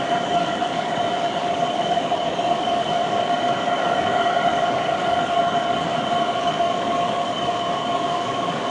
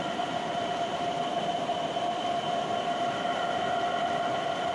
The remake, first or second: first